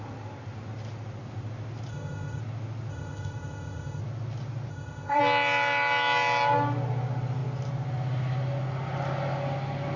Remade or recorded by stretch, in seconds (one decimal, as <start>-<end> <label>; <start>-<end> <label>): 0.0-1.9 recorded; 1.9-2.4 remade; 2.4-2.9 recorded; 2.9-4.0 remade; 4.0-4.7 recorded; 4.7-5.2 remade; 5.2-10.0 recorded